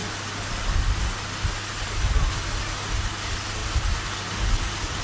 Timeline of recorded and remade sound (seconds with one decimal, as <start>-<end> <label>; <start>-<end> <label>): 0.0-5.0 recorded